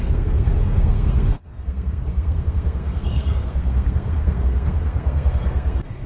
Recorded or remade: remade